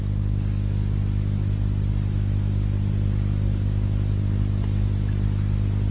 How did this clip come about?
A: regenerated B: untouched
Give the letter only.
B